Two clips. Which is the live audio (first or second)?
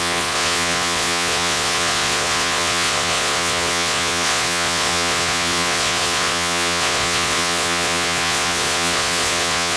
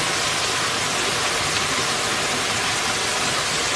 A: second